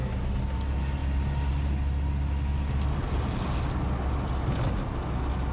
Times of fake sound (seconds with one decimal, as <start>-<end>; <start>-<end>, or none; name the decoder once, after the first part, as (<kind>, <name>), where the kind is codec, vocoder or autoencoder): none